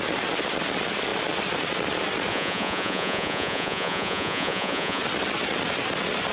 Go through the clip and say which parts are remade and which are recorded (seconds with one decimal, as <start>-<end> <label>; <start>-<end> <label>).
0.0-2.3 recorded; 2.3-5.0 remade; 5.0-6.3 recorded